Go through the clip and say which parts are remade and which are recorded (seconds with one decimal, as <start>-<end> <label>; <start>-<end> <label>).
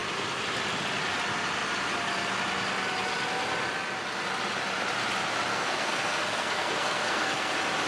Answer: 0.0-5.5 recorded; 5.5-7.5 remade; 7.5-7.9 recorded